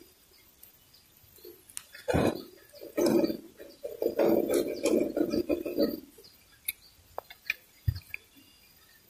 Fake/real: real